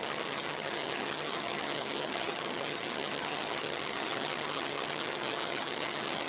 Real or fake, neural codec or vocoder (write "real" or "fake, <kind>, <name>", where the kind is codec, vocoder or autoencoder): fake, vocoder, HiFi-GAN